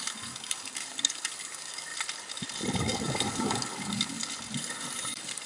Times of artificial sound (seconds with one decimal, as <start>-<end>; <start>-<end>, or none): 0.0-1.9; 2.8-4.2; 5.1-5.5

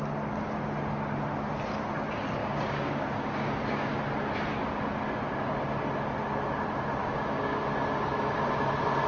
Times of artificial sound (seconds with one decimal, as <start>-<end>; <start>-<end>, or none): 2.4-4.0; 7.0-7.6